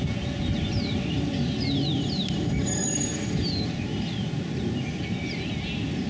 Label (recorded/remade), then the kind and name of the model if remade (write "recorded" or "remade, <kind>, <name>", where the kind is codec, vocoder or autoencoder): recorded